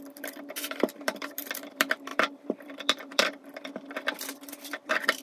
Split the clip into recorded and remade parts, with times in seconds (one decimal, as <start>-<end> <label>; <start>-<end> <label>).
0.0-5.2 remade